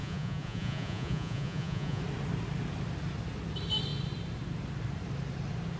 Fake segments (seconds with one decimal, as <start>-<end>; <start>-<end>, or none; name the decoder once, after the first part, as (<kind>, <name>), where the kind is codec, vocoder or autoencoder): 0.0-2.0 (vocoder, Vocos)